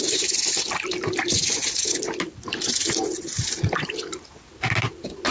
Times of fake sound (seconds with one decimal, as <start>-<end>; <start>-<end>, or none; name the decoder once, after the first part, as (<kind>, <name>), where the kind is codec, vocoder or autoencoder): none